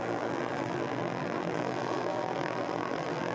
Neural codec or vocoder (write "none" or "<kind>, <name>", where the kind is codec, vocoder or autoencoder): vocoder, BigVGAN v2